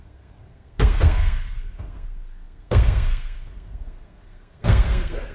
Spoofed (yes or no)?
yes